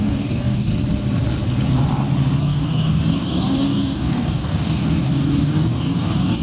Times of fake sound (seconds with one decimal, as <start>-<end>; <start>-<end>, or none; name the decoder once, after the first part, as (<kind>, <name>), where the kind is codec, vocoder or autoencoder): 0.0-0.7 (codec, DAC); 2.4-6.4